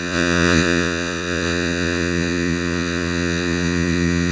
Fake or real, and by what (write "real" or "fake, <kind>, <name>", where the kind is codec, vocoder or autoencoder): fake, vocoder, Vocos